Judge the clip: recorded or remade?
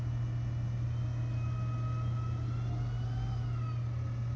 recorded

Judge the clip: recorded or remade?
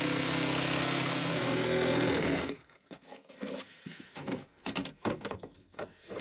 remade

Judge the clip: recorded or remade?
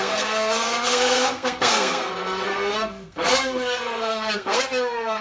remade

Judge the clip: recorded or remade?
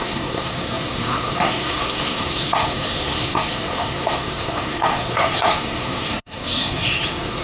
remade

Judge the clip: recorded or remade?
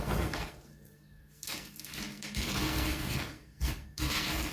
remade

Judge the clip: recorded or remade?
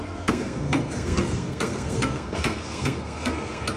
remade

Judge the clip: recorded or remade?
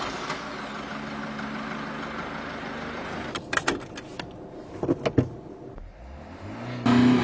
recorded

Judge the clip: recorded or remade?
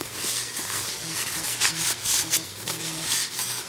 remade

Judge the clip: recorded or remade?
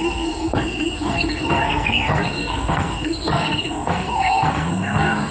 remade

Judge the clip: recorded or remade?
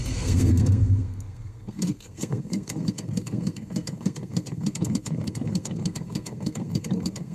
remade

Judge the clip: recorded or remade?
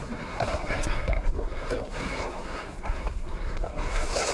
remade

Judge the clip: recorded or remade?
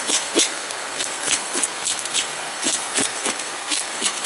remade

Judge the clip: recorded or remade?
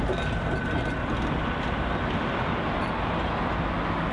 recorded